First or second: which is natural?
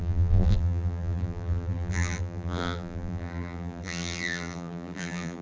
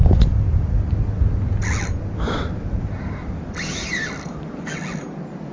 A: second